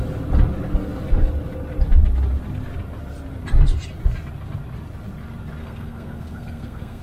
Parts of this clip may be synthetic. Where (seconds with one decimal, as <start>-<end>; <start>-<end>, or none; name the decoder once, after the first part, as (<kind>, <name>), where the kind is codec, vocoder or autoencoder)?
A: 5.6-7.0 (codec, SNAC)